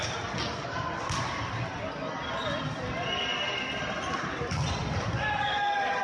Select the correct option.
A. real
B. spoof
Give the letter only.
A